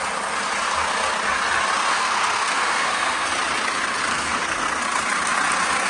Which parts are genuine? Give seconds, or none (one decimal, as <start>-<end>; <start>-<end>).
0.0-1.9; 3.3-4.1; 4.8-5.9